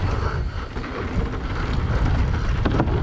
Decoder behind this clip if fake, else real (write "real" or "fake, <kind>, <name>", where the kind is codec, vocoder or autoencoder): real